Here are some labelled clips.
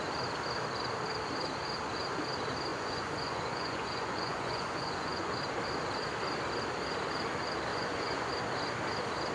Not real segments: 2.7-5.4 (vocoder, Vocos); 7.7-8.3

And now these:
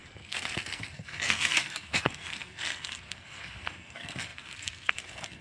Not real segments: 0.0-5.4 (codec, SNAC)

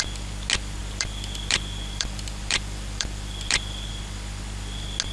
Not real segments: 0.8-3.9 (vocoder, BigVGAN v2)

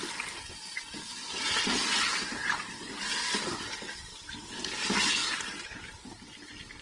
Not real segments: 5.2-5.9 (vocoder, BigVGAN v2)

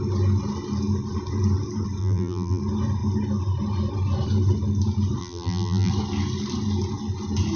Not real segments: 2.0-2.6 (vocoder, BigVGAN v2); 5.2-5.9